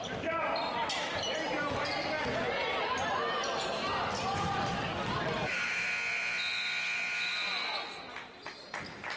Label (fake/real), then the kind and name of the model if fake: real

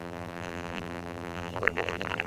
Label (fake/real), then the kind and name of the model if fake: fake, vocoder, BigVGAN v2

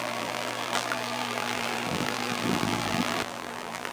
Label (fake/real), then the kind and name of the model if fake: fake, vocoder, BigVGAN v2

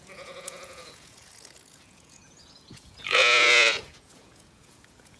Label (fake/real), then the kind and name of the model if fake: fake, vocoder, Vocos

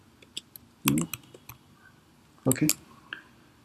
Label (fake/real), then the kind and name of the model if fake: real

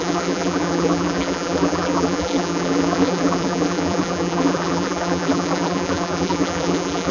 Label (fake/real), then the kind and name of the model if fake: fake, vocoder, BigVGAN v2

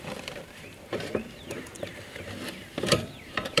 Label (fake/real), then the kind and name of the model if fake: fake, vocoder, BigVGAN v2